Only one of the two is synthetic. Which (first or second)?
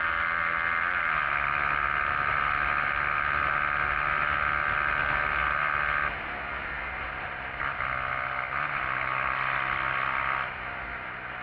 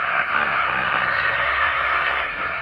second